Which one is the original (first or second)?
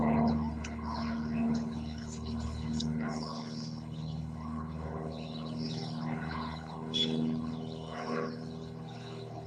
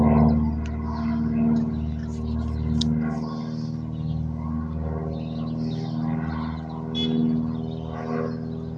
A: second